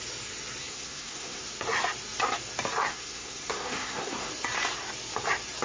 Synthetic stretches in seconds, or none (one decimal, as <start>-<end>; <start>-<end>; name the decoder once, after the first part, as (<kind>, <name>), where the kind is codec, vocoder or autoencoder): 0.6-1.4 (codec, SNAC); 2.9-4.3